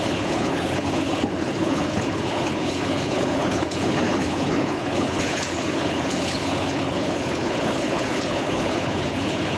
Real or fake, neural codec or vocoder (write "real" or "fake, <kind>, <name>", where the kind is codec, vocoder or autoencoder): fake, codec, HILCodec